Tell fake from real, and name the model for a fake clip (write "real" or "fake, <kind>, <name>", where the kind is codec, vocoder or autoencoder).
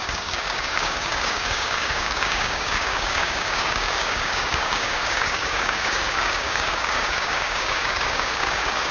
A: fake, codec, DAC